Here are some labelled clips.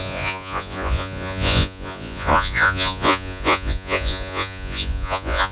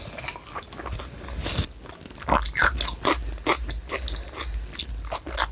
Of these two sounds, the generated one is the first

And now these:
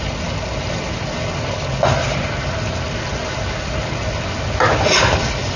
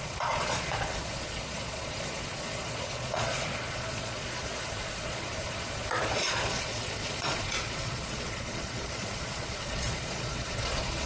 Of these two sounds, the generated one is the second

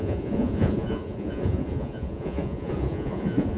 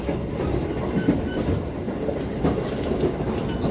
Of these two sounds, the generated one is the first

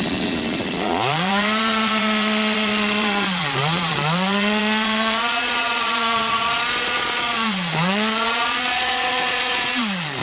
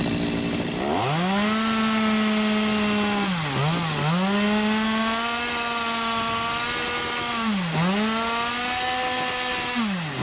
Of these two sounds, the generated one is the first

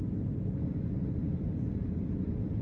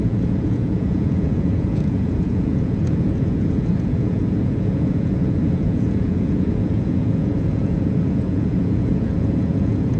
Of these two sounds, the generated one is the second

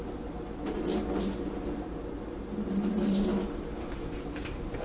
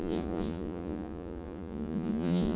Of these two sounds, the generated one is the second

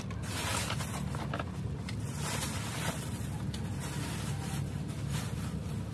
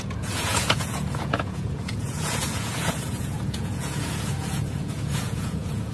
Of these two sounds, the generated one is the second